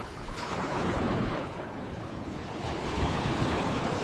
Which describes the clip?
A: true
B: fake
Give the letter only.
B